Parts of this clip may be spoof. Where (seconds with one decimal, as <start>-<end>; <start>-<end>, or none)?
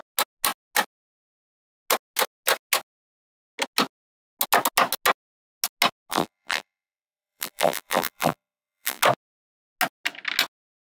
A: 6.1-9.0